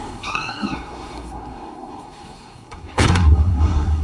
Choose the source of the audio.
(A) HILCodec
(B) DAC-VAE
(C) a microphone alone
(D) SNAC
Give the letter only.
D